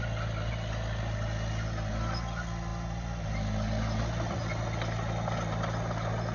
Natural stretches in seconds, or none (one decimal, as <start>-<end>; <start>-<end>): 0.0-6.3